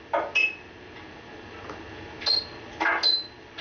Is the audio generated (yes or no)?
no